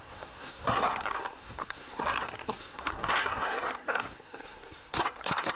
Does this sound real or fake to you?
fake